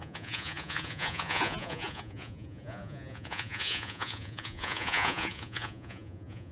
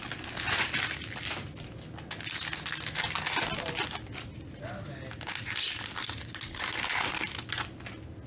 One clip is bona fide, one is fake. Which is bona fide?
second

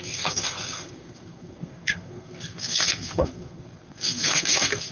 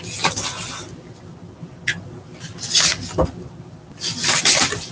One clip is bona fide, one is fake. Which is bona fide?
second